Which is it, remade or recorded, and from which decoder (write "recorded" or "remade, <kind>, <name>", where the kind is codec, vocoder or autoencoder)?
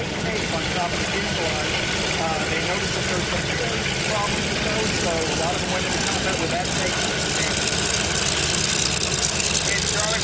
recorded